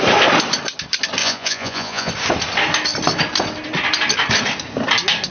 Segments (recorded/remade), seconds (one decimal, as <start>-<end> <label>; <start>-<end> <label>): 0.0-1.2 recorded; 1.2-2.1 remade; 2.1-5.3 recorded